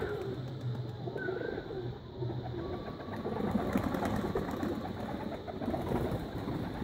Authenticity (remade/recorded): recorded